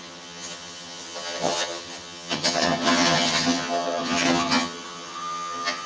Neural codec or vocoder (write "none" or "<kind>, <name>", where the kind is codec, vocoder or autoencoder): vocoder, HiFi-GAN